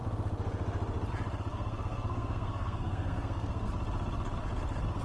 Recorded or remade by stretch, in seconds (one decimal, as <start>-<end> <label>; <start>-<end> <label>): 0.0-1.5 recorded; 1.5-3.7 remade; 3.7-5.0 recorded